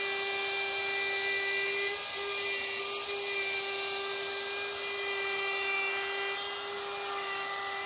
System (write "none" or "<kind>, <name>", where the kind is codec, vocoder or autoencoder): none